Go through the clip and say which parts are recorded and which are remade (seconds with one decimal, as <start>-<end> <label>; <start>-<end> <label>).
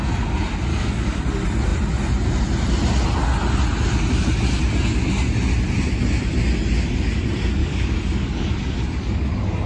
0.0-0.7 recorded; 0.7-1.2 remade; 1.2-7.6 recorded; 7.6-9.7 remade